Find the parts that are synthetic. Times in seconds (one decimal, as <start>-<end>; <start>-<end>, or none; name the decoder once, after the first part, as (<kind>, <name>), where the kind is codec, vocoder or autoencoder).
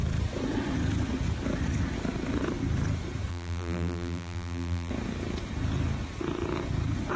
3.3-4.9 (vocoder, BigVGAN v2)